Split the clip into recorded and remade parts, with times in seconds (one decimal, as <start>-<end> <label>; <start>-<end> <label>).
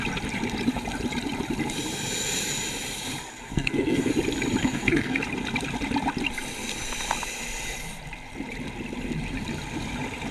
0.0-3.2 recorded; 3.2-4.1 remade; 4.1-4.6 recorded; 4.6-5.2 remade; 5.2-10.3 recorded